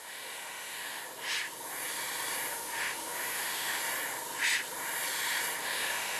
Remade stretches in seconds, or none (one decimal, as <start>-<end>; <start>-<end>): 0.0-1.0; 2.5-3.8; 5.6-6.2

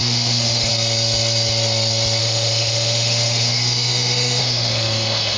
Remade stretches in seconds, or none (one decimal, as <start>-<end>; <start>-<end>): 0.0-0.7; 2.2-5.4

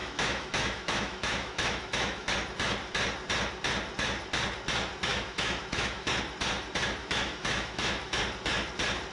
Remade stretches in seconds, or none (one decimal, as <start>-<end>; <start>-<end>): 0.0-2.3; 5.1-6.1; 7.0-8.2

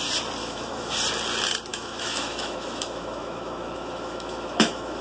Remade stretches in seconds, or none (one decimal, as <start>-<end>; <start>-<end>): 0.4-0.9; 1.7-5.0

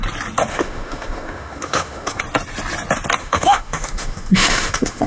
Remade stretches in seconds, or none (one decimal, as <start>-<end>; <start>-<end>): 0.5-2.2; 3.2-5.1

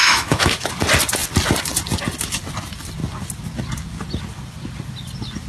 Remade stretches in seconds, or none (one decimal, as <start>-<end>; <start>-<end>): 0.0-0.7

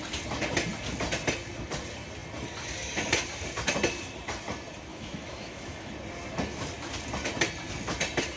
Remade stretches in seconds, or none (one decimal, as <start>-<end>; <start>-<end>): 4.9-5.9